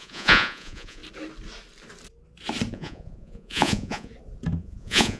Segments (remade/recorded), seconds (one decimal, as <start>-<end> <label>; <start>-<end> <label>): 0.0-1.0 remade; 1.0-2.7 recorded; 2.7-4.1 remade; 4.1-4.6 recorded; 4.6-5.2 remade